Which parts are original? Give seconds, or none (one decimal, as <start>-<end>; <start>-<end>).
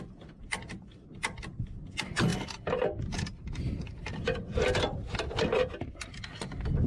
0.0-6.9